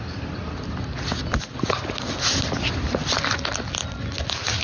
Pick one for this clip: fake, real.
real